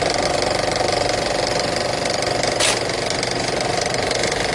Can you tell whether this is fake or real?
real